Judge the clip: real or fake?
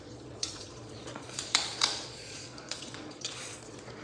fake